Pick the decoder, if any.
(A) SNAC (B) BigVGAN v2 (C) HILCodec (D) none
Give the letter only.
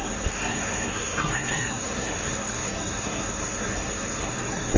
A